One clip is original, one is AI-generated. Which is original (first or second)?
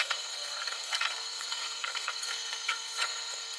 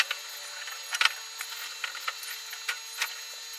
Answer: second